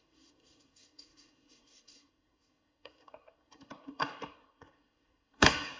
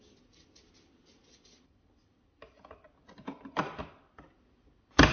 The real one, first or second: second